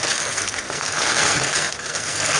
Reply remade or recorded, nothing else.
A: remade